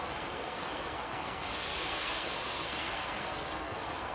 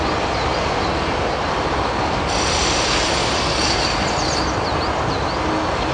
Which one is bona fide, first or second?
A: second